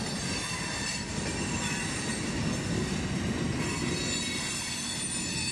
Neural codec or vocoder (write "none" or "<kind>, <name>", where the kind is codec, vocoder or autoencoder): none